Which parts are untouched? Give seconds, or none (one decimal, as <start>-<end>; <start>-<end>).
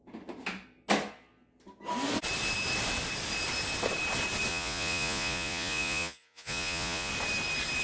0.0-4.5; 7.1-7.8